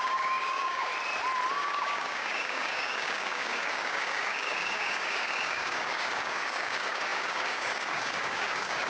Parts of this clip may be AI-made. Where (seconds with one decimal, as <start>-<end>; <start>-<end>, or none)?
0.0-0.9; 1.5-8.9